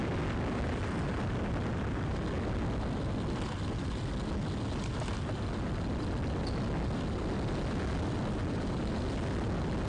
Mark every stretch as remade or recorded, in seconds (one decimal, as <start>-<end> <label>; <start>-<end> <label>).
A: 0.0-9.9 recorded